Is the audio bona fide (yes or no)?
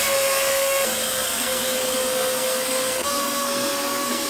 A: no